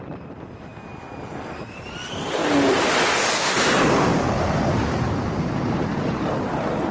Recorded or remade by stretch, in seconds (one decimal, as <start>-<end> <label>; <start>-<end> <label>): 0.0-0.7 remade; 0.7-1.4 recorded; 1.4-2.4 remade; 2.4-3.5 recorded; 3.5-4.1 remade; 4.1-4.7 recorded; 4.7-6.9 remade